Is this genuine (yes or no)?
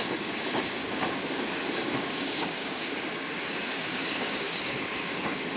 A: no